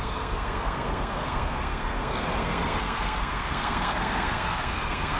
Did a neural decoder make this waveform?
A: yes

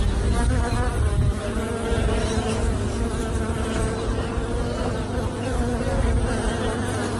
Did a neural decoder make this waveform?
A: no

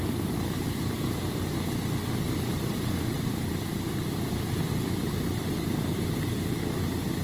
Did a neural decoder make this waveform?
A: no